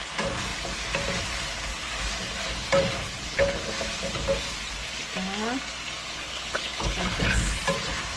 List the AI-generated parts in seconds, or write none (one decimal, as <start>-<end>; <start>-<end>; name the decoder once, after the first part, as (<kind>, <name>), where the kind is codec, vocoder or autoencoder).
3.0-3.7 (codec, HILCodec); 6.0-7.6